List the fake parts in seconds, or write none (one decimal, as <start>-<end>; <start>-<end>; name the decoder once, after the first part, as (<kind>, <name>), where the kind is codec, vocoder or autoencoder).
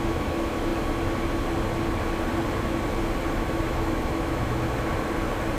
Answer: 0.0-0.7 (autoencoder, DAC-VAE); 3.3-4.9